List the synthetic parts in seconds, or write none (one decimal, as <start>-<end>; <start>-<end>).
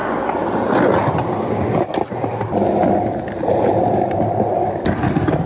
none